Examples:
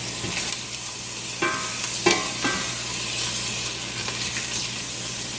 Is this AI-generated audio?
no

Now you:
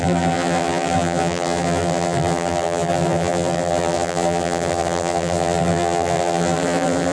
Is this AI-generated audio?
yes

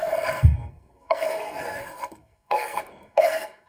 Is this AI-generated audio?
yes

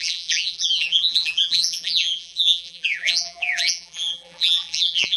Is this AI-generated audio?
yes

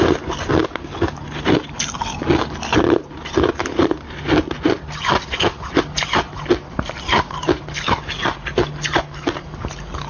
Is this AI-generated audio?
no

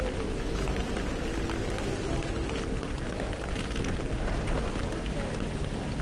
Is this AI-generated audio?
no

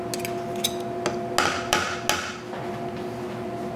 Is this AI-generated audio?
no